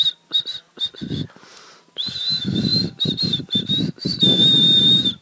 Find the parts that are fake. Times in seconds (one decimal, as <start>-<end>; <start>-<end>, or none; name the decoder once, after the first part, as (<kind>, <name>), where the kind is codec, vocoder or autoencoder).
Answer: 1.5-2.3 (vocoder, BigVGAN v2); 2.7-3.4; 4.0-5.2